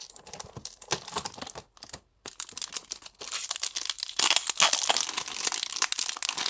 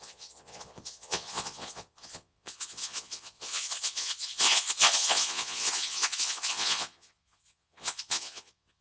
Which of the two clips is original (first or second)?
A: first